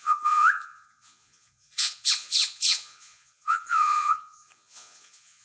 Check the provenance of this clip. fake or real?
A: fake